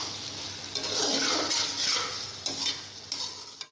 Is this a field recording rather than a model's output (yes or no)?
yes